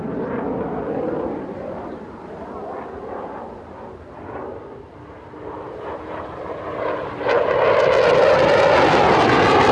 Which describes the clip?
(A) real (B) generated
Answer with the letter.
A